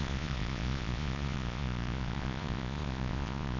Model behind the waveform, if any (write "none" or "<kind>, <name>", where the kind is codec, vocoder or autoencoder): vocoder, Vocos